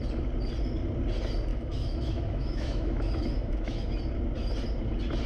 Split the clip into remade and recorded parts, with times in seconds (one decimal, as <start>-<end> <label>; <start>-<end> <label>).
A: 0.0-1.5 recorded; 1.5-4.0 remade; 4.0-5.3 recorded